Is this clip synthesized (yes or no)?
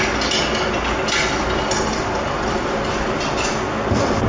no